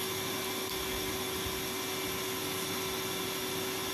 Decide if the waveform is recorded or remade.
recorded